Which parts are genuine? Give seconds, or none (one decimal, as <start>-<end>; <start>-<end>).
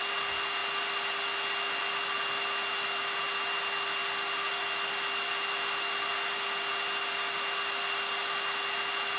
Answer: 0.0-9.2